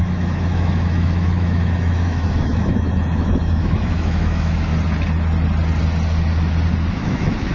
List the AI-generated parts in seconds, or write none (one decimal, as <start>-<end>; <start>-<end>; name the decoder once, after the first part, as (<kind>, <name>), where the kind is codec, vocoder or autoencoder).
0.0-4.7 (autoencoder, DAC-VAE); 6.9-7.5